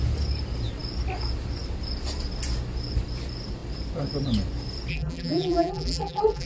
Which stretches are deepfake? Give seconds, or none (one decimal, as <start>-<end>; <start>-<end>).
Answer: 4.9-6.5